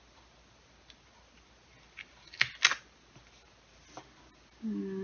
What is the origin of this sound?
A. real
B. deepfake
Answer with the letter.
A